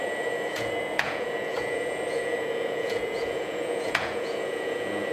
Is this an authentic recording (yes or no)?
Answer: no